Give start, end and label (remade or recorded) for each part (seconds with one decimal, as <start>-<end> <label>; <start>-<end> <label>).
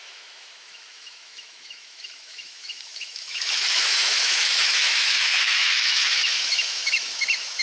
0.0-7.6 remade